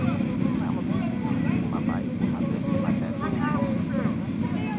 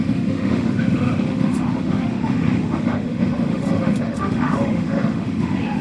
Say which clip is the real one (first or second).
first